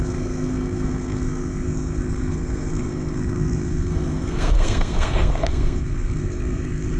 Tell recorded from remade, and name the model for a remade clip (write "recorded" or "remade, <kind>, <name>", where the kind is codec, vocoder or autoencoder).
remade, codec, SNAC